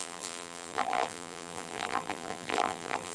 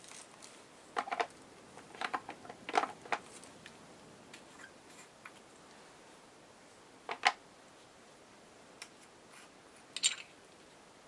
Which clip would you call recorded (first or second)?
second